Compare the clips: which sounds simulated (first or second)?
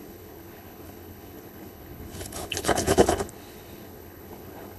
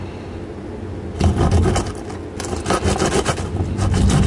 first